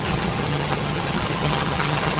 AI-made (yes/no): yes